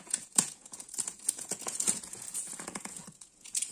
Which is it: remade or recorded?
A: remade